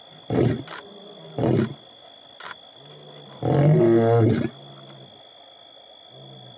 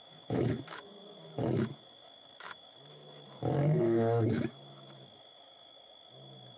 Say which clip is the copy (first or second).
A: second